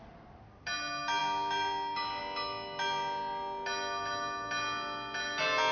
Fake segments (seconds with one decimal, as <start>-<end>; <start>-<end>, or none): none